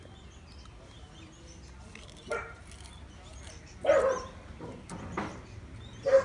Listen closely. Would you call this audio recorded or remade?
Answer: recorded